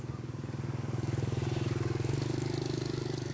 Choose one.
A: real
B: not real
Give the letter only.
B